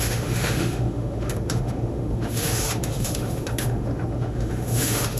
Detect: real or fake fake